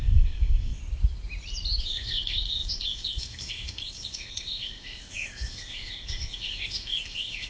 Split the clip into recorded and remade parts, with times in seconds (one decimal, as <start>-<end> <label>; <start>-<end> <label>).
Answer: 0.0-0.8 remade; 0.8-1.8 recorded; 1.8-7.5 remade